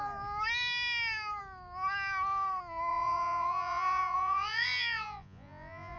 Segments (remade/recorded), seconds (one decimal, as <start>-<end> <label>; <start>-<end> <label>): 0.0-2.9 recorded; 2.9-6.0 remade